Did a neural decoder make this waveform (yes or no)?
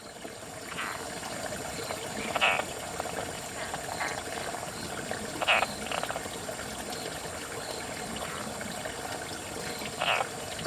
no